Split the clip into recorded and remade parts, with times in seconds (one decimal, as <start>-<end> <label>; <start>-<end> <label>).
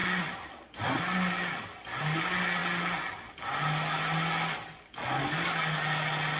0.0-6.4 recorded